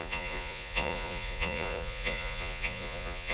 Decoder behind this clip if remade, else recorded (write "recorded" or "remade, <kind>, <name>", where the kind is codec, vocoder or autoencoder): remade, vocoder, Vocos